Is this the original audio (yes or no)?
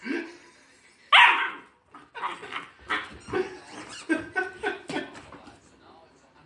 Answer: yes